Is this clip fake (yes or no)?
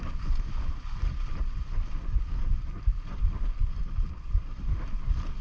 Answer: no